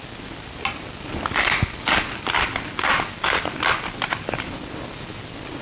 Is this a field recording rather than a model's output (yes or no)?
yes